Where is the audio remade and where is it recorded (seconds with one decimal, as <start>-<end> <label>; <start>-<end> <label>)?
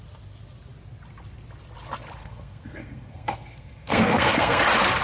0.0-2.2 recorded; 2.2-4.6 remade; 4.6-5.0 recorded